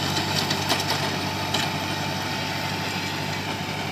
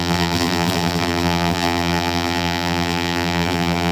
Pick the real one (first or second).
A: first